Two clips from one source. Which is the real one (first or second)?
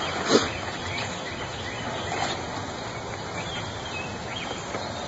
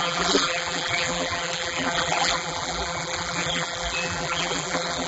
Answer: first